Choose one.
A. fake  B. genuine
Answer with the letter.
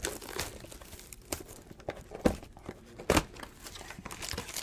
B